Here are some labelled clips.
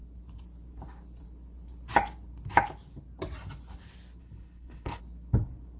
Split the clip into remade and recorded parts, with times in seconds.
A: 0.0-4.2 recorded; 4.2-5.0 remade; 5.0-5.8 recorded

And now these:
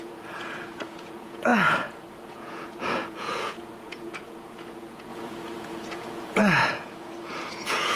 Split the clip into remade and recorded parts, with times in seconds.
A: 0.0-8.0 remade

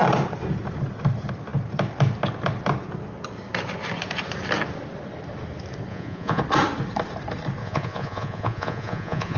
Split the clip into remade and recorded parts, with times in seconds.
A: 0.0-5.9 recorded; 5.9-6.4 remade; 6.4-7.6 recorded; 7.6-9.4 remade

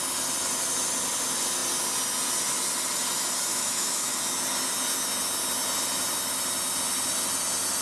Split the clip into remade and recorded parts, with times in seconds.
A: 0.0-3.5 recorded; 3.5-4.1 remade; 4.1-7.8 recorded

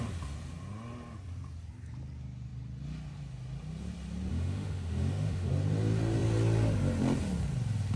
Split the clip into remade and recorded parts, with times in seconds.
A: 0.0-4.3 recorded; 4.3-5.5 remade; 5.5-8.0 recorded

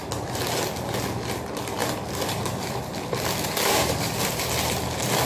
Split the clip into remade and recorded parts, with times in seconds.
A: 0.0-1.8 recorded; 1.8-5.3 remade

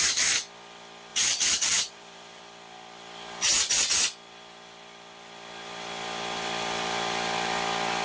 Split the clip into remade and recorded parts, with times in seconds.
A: 0.0-1.1 recorded; 1.1-2.4 remade; 2.4-8.0 recorded

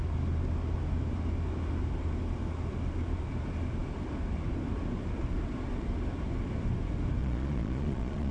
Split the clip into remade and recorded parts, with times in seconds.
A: 0.0-7.2 recorded; 7.2-8.3 remade